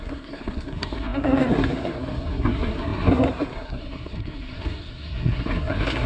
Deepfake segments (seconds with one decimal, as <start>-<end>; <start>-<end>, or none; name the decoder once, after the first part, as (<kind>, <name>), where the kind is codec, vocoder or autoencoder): 0.0-6.1 (codec, SNAC)

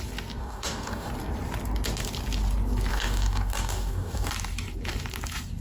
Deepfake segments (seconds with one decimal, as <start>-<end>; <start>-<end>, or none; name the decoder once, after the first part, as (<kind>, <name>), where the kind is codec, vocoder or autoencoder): 0.4-1.1 (codec, DAC); 2.9-4.3